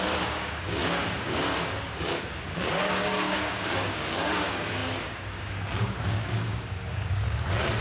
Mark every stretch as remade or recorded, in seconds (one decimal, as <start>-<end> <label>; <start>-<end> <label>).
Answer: 0.0-7.8 remade